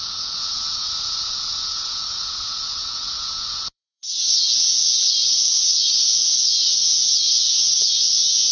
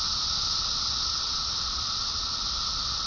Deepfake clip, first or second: first